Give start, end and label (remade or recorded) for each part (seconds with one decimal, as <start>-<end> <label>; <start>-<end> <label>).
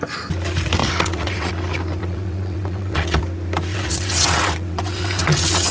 0.0-0.8 recorded; 0.8-1.5 remade; 1.5-2.0 recorded; 2.0-3.2 remade; 3.2-3.7 recorded; 3.7-5.7 remade